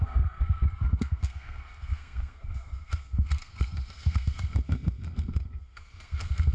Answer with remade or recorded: remade